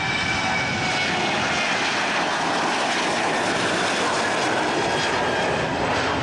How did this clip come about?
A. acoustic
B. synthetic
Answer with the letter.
A